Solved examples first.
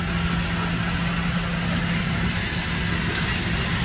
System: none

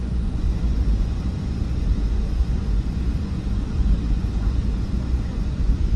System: vocoder, Vocos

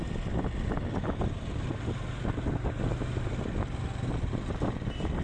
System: none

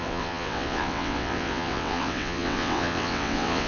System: vocoder, WaveNeXt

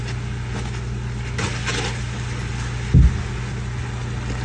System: none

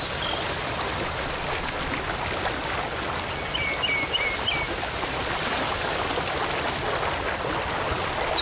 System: none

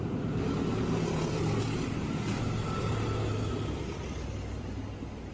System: none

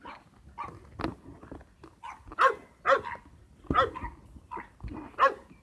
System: none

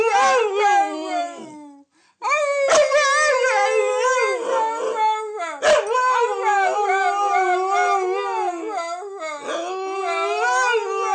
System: none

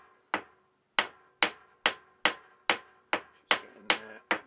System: none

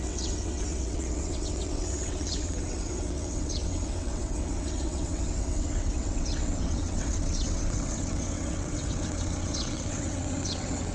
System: vocoder, WaveNeXt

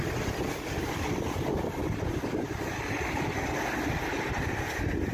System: none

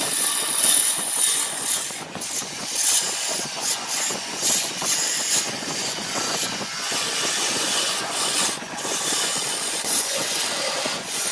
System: vocoder, Vocos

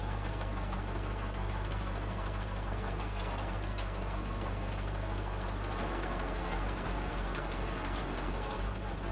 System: codec, SNAC